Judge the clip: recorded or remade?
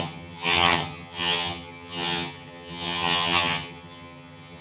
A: remade